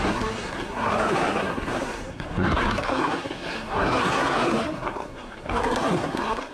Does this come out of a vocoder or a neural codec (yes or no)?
yes